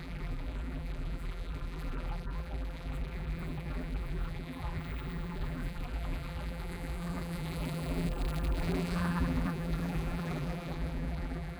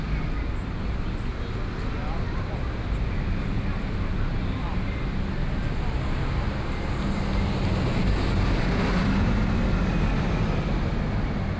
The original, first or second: second